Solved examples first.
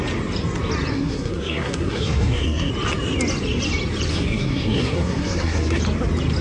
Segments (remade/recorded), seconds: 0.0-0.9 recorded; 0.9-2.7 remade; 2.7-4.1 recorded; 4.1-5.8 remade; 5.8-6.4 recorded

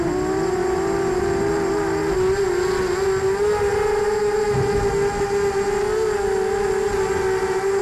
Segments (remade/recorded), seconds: 0.0-7.8 recorded

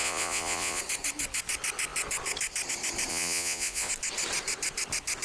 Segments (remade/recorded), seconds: 0.0-0.8 remade; 0.8-3.1 recorded; 3.1-3.9 remade; 3.9-5.2 recorded

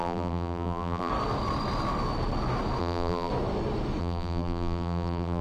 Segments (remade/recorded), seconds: 0.0-1.1 remade; 1.1-2.8 recorded; 2.8-3.3 remade; 3.3-4.0 recorded; 4.0-5.4 remade

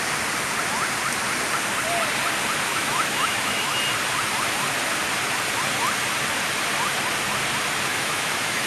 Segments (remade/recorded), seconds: 0.0-2.7 recorded; 2.7-3.8 remade; 3.8-7.9 recorded; 7.9-8.7 remade

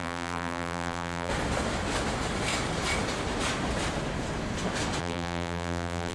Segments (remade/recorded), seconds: 0.0-1.3 remade; 1.3-5.0 recorded; 5.0-6.1 remade

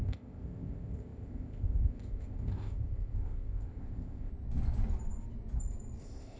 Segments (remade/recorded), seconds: 0.0-4.3 remade; 4.3-6.0 recorded; 6.0-6.4 remade

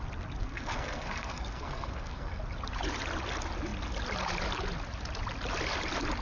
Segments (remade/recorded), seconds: 0.0-0.4 recorded; 0.4-2.4 remade; 2.4-6.2 recorded